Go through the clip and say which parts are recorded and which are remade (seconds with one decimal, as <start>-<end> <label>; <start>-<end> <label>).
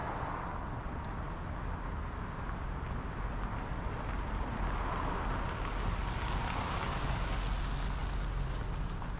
0.0-9.2 recorded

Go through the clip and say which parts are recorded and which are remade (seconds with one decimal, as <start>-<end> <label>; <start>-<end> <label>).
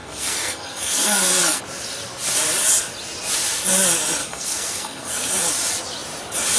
0.0-1.6 remade; 1.6-4.2 recorded; 4.2-5.3 remade; 5.3-6.6 recorded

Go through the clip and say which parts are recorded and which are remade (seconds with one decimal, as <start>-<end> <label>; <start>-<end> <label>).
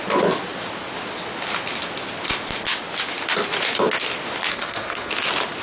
0.0-4.5 recorded; 4.5-5.1 remade; 5.1-5.6 recorded